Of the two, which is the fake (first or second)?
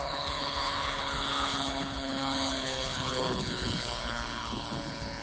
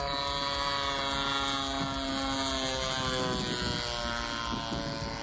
first